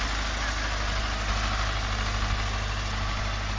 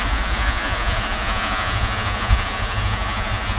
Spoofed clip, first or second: second